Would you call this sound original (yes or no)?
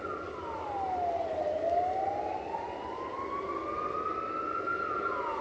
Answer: yes